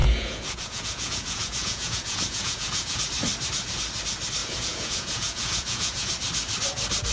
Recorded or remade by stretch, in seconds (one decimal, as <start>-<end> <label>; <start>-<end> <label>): 0.0-3.0 remade; 3.0-4.4 recorded; 4.4-6.1 remade; 6.1-7.1 recorded